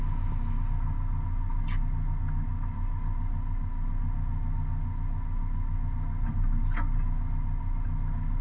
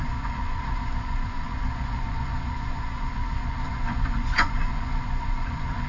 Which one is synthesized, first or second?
second